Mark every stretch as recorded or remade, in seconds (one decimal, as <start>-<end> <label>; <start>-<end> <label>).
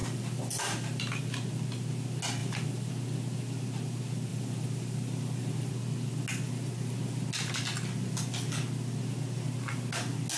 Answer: 0.0-1.2 remade; 1.2-2.4 recorded; 2.4-2.9 remade; 2.9-4.3 recorded; 4.3-5.7 remade; 5.7-10.4 recorded